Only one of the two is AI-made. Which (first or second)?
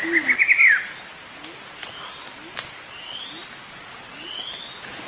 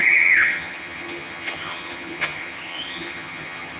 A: second